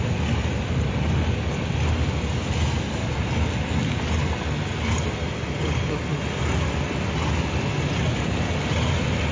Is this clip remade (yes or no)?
no